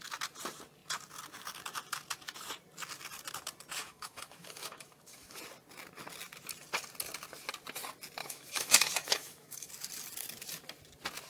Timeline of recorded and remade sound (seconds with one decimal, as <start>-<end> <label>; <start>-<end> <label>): 0.0-3.8 recorded; 3.8-5.4 remade; 5.4-8.2 recorded; 8.2-9.7 remade; 9.7-11.3 recorded

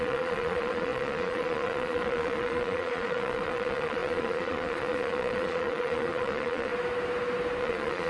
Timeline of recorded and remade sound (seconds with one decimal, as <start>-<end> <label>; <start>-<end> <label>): 0.0-6.7 remade; 6.7-7.6 recorded; 7.6-8.1 remade

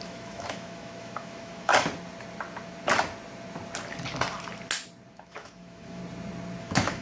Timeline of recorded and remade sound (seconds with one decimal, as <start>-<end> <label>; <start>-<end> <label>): 0.0-1.7 remade; 1.7-5.1 recorded; 5.1-6.0 remade; 6.0-6.6 recorded; 6.6-7.0 remade

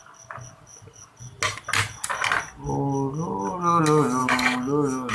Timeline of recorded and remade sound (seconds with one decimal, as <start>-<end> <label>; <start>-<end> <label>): 0.0-4.2 recorded; 4.2-5.1 remade

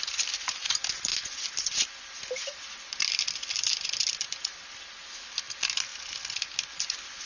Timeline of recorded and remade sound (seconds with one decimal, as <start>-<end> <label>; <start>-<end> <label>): 0.0-7.3 recorded

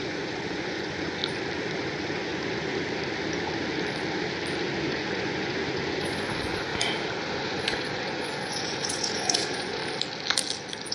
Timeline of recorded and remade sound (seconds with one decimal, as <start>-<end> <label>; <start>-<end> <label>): 0.0-1.2 remade; 1.2-1.8 recorded; 1.8-2.7 remade; 2.7-4.8 recorded; 4.8-6.7 remade; 6.7-7.4 recorded; 7.4-9.8 remade; 9.8-10.9 recorded